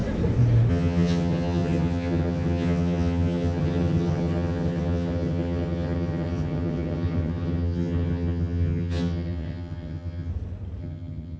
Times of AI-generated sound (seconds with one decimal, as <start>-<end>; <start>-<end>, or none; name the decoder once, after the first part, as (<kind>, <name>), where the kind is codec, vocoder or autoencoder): 0.7-10.3 (vocoder, HiFi-GAN); 10.8-11.4